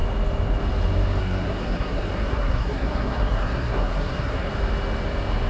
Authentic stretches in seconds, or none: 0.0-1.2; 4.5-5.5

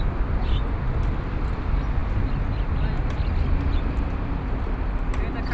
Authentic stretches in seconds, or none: 0.0-5.5

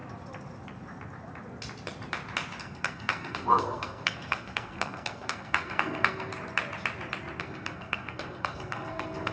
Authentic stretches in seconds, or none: 0.0-2.6; 6.3-7.4

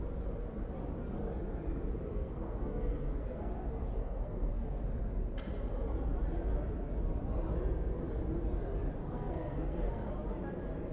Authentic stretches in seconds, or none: 0.0-2.1; 3.5-4.0; 4.5-9.0; 10.1-10.9

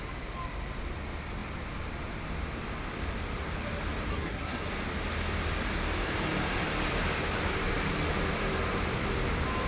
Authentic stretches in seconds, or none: 0.0-4.1; 4.7-9.7

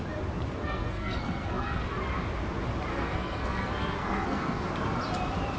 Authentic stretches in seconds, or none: 0.0-0.6; 1.8-2.9; 4.7-5.6

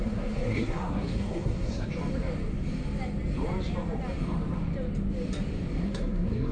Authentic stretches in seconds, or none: 1.9-5.8

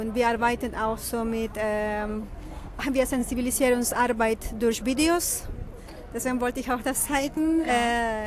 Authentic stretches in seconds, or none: 0.0-2.1; 2.8-7.0; 7.7-8.3